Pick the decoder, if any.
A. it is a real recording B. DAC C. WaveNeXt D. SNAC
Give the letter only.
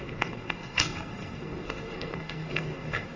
D